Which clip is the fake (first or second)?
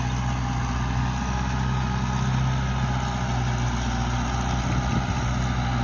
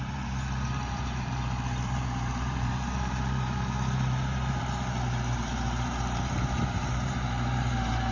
second